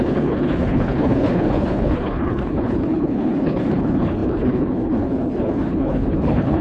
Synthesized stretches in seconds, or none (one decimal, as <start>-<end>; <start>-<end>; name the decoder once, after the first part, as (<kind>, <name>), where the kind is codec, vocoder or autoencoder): 0.0-6.6 (codec, HILCodec)